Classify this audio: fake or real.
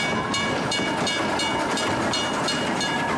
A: real